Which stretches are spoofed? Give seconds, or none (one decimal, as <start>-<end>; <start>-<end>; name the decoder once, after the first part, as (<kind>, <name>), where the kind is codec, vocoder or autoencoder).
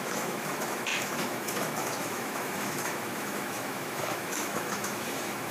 0.0-5.5 (autoencoder, DAC-VAE)